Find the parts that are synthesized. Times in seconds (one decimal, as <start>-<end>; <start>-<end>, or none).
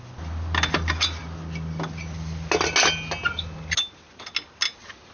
none